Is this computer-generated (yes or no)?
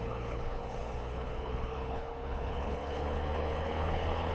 yes